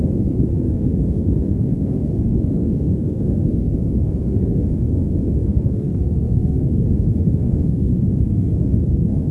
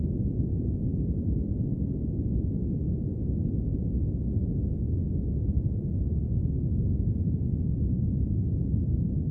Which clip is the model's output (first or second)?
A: first